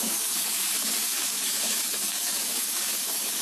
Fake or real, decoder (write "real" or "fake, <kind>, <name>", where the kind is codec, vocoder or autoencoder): fake, codec, DAC